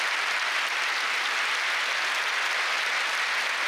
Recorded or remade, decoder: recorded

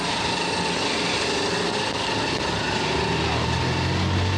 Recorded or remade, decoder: recorded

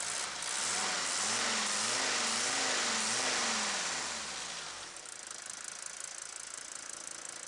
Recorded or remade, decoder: recorded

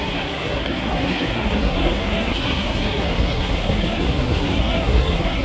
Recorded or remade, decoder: remade, codec, SNAC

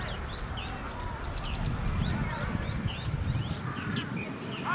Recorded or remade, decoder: recorded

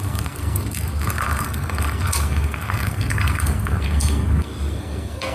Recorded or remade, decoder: remade, codec, SNAC